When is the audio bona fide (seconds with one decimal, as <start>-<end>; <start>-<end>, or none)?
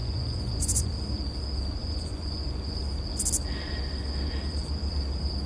0.9-1.8; 2.8-5.5